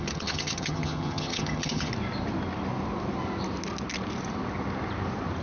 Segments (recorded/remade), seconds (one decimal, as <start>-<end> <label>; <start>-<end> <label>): 0.0-1.9 remade; 1.9-5.4 recorded